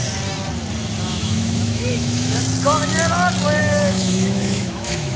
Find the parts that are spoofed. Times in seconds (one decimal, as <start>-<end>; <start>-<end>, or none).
1.1-2.4; 3.6-5.2